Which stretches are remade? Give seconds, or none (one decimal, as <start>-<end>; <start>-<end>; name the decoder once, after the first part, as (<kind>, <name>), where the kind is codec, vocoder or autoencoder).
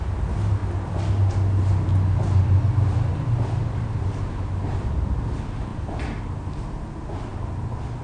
none